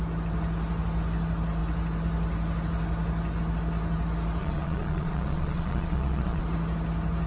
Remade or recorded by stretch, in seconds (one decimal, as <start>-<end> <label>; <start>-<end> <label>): 0.0-4.4 recorded; 4.4-6.4 remade; 6.4-7.3 recorded